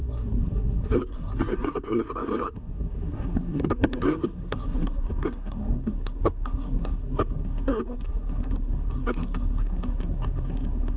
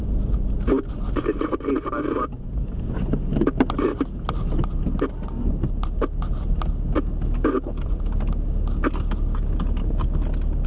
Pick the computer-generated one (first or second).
first